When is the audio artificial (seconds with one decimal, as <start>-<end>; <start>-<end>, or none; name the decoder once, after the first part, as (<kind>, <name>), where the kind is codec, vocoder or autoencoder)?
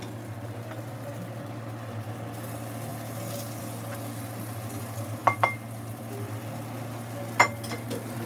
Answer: none